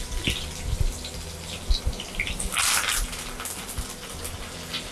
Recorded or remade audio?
recorded